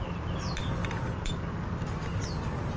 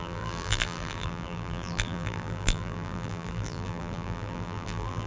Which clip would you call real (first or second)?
first